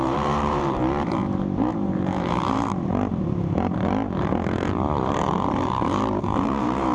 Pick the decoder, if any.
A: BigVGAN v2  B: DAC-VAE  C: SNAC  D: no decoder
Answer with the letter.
A